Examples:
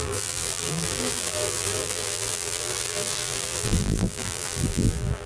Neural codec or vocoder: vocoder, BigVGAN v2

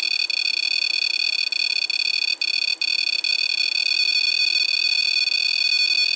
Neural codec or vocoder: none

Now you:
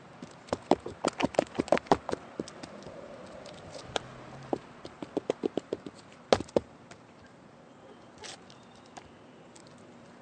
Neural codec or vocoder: none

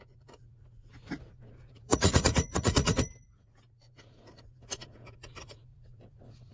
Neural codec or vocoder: vocoder, Vocos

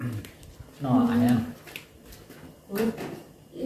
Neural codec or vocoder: none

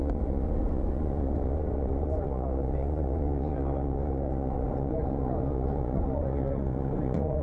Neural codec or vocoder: vocoder, Vocos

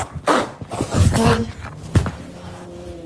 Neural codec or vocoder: none